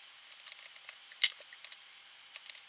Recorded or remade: recorded